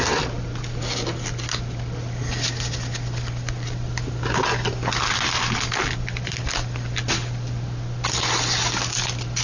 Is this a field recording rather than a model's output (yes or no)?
yes